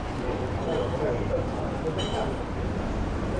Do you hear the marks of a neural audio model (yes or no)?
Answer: no